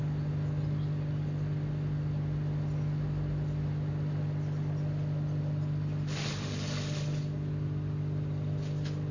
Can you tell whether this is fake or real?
real